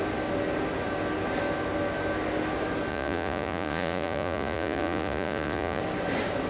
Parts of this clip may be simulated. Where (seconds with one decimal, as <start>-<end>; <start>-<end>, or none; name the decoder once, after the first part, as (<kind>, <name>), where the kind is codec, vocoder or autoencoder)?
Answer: 2.9-5.8 (vocoder, Vocos)